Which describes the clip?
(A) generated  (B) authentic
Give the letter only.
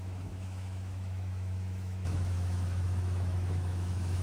A